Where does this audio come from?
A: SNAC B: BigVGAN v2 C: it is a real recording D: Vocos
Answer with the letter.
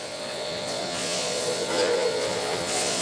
D